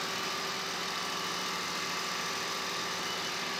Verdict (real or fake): real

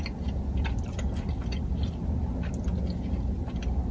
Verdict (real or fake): real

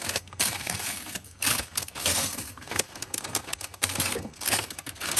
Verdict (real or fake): fake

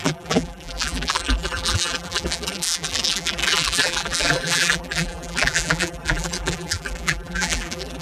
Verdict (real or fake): fake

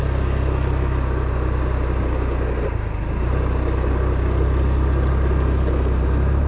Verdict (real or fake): real